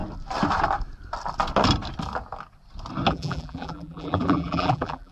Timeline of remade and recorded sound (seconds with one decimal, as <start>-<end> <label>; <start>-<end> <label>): 0.0-3.1 recorded; 3.1-5.1 remade